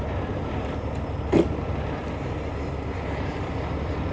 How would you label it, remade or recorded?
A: recorded